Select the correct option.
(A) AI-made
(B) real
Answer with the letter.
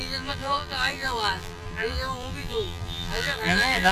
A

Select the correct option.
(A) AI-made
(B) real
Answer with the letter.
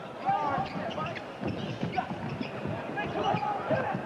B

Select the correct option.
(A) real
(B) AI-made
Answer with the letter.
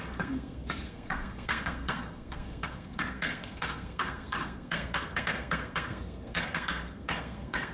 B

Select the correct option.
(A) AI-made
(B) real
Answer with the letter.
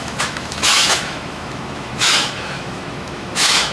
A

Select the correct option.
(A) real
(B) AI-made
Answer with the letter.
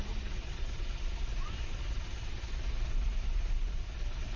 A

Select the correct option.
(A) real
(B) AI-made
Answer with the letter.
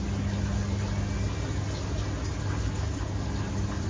A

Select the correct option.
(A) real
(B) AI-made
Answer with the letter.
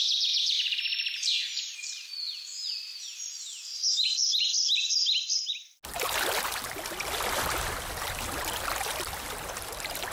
A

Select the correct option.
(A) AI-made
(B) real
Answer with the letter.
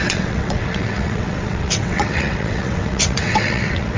A